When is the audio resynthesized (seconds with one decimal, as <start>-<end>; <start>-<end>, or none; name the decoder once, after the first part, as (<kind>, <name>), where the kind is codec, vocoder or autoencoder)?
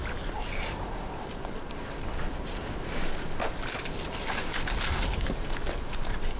0.7-1.3 (vocoder, BigVGAN v2); 5.1-6.4